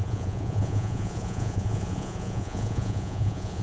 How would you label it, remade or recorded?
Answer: remade